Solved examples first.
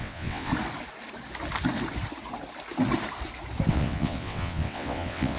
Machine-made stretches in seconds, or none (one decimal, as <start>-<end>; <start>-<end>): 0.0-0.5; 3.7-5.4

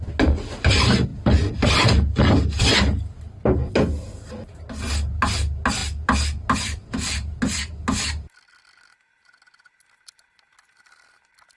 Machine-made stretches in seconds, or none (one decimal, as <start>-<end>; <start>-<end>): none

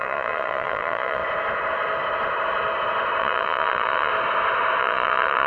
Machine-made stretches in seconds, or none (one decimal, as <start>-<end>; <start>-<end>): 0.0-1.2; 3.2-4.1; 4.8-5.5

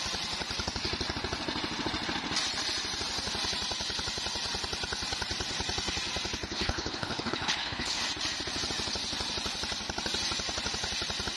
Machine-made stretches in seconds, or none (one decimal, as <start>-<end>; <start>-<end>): 6.5-8.0